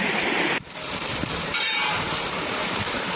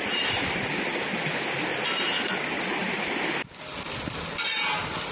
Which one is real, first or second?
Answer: second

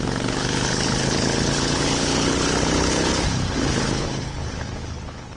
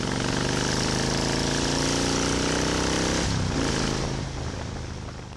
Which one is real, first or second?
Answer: second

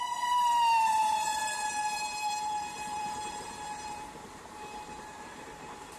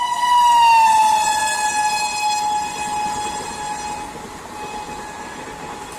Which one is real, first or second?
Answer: second